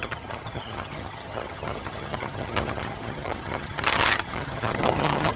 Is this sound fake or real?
fake